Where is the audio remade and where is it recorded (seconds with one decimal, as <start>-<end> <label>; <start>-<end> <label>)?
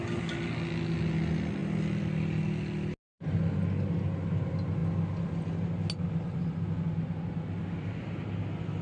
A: 0.0-8.8 recorded